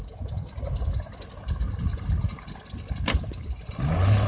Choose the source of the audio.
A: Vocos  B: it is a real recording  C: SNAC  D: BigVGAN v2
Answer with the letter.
B